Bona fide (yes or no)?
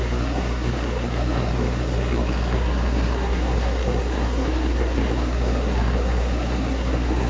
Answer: no